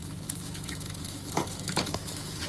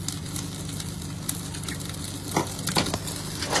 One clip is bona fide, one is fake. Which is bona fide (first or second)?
second